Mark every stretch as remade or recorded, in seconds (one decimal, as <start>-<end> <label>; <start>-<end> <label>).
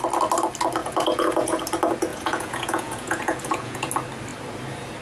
0.0-0.8 recorded; 0.8-1.6 remade; 1.6-2.1 recorded; 2.1-3.9 remade; 3.9-5.0 recorded